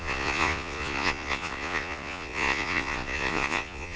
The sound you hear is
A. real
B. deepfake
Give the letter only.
B